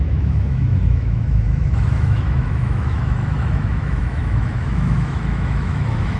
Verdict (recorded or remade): remade